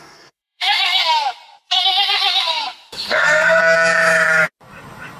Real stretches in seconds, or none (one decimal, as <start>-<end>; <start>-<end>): 1.0-1.8; 3.6-5.2